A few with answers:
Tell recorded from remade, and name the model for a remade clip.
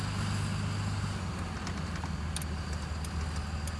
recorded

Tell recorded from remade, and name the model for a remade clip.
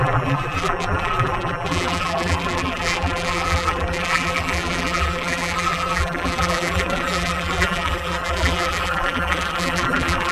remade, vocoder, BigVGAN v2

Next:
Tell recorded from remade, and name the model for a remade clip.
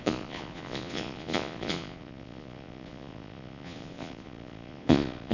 remade, vocoder, Vocos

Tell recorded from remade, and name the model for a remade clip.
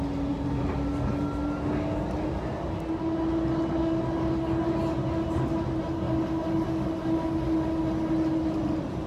recorded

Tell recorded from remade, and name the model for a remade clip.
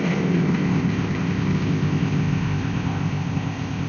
remade, codec, ZipCodec